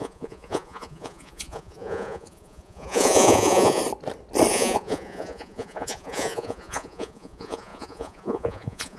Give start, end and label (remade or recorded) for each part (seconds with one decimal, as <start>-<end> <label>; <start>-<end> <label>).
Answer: 0.0-3.8 remade; 3.8-4.5 recorded; 4.5-9.0 remade